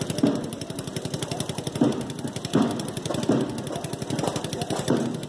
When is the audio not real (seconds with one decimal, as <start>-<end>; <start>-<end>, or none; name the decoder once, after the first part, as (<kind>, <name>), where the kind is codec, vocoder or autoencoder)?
none